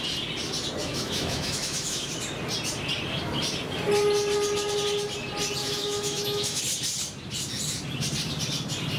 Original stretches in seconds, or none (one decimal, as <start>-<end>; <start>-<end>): 0.0-0.8; 2.1-5.6; 6.6-9.0